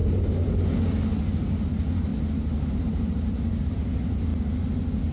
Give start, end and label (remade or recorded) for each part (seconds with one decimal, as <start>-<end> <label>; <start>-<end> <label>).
0.0-1.7 recorded; 1.7-2.1 remade; 2.1-3.7 recorded; 3.7-4.3 remade; 4.3-5.1 recorded